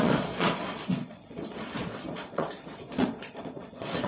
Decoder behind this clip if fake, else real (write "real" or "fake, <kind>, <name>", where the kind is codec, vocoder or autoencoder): fake, vocoder, Vocos